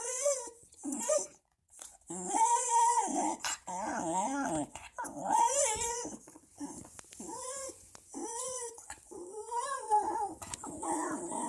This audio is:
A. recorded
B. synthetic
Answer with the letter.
B